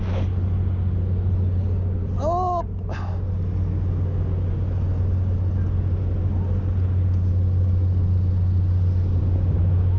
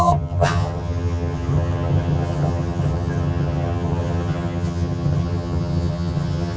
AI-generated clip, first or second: second